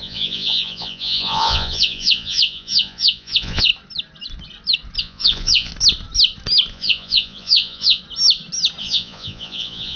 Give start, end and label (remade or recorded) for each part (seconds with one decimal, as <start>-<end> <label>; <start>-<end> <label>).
0.0-3.7 remade; 3.7-5.0 recorded; 5.0-5.7 remade; 5.7-6.7 recorded; 6.7-8.0 remade; 8.0-8.8 recorded; 8.8-10.0 remade